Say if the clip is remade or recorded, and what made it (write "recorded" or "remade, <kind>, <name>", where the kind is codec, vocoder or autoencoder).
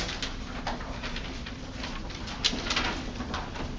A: recorded